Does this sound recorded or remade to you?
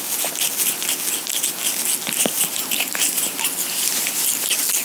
recorded